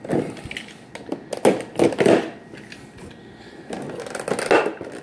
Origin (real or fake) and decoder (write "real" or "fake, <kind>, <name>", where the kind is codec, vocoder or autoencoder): real